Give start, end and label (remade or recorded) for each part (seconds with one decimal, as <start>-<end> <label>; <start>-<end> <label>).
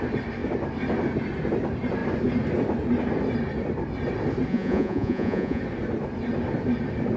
0.0-4.5 recorded; 4.5-5.6 remade; 5.6-7.2 recorded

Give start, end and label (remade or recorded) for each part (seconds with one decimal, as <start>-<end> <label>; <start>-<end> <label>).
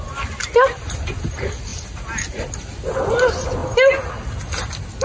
0.0-5.0 recorded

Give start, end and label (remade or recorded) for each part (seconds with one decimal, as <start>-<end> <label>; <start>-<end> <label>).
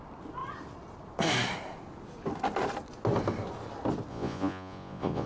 0.0-4.1 recorded; 4.1-5.3 remade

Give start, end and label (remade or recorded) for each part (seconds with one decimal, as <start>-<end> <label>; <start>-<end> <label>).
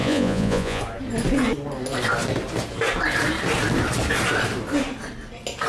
0.0-0.8 remade; 0.8-5.7 recorded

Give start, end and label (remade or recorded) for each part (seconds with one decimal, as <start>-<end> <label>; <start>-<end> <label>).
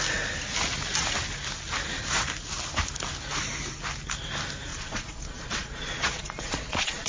0.0-4.7 recorded; 4.7-7.1 remade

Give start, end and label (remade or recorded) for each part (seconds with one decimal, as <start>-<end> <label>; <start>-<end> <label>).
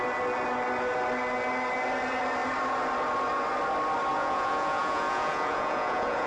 0.0-4.1 recorded; 4.1-6.3 remade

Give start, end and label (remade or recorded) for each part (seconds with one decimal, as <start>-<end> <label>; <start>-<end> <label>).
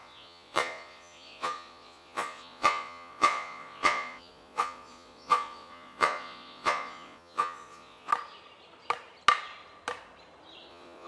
0.0-8.1 remade; 8.1-10.7 recorded; 10.7-11.1 remade